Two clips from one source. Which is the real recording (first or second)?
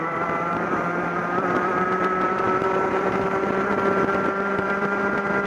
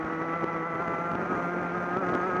second